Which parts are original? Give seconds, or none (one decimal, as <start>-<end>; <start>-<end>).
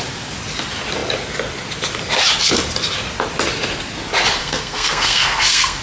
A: 0.0-4.4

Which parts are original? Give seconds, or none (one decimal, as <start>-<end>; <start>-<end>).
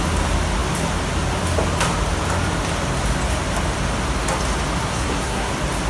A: 0.0-4.8; 5.5-5.9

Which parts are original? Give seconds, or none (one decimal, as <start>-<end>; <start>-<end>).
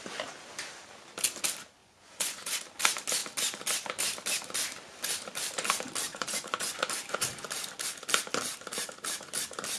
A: 0.0-1.8; 2.6-6.1; 6.8-9.8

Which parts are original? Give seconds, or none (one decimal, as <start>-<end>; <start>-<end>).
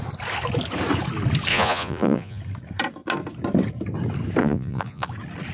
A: 0.0-1.5; 2.4-4.4; 5.1-5.5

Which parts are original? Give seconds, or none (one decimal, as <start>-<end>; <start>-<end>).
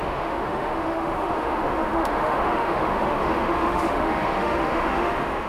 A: none